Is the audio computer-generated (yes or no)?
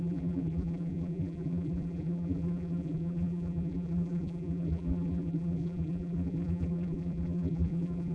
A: yes